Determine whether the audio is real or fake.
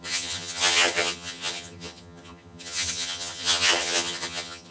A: fake